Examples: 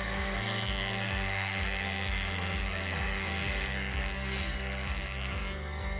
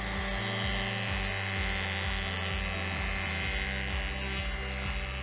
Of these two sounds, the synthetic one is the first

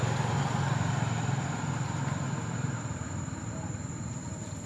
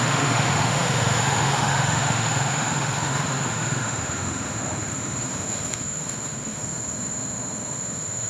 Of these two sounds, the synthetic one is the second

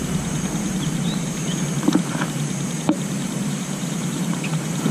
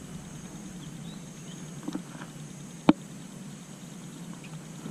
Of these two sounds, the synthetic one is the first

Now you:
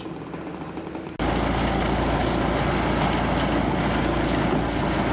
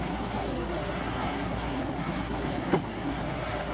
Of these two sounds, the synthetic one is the second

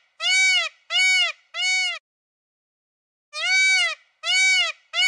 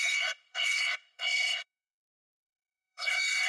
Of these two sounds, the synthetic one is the second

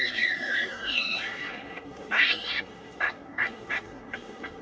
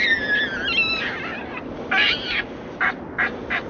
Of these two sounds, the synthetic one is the first